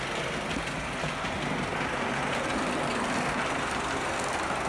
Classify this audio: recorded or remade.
recorded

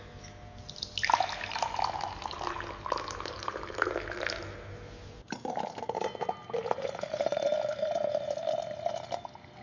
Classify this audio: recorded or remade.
recorded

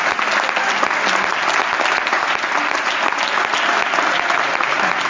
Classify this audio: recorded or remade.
recorded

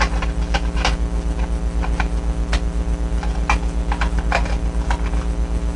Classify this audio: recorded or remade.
recorded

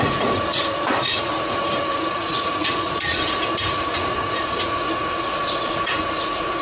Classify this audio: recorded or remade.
remade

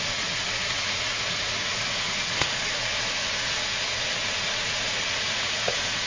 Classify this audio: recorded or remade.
remade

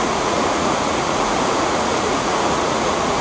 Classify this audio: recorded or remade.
remade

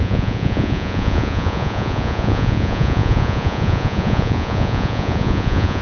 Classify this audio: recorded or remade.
remade